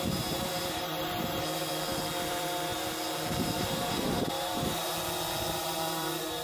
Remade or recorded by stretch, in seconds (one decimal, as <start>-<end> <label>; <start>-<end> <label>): 0.0-1.7 remade; 1.7-2.3 recorded; 2.3-2.7 remade; 2.7-3.4 recorded; 3.4-4.9 remade; 4.9-5.6 recorded; 5.6-6.4 remade